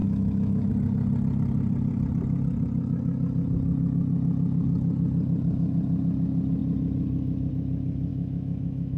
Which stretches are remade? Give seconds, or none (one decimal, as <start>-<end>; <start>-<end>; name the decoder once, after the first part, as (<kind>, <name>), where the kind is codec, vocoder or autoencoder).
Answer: 0.0-0.7 (autoencoder, DAC-VAE); 8.1-9.0